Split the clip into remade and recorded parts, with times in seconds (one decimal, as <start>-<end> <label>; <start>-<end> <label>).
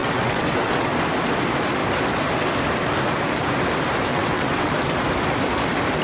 0.0-0.9 remade; 0.9-4.1 recorded; 4.1-4.7 remade; 4.7-6.0 recorded